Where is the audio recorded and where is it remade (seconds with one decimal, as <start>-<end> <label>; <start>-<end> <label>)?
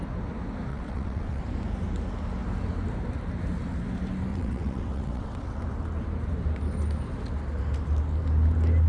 0.0-0.7 recorded; 0.7-1.4 remade; 1.4-4.3 recorded; 4.3-5.6 remade; 5.6-8.9 recorded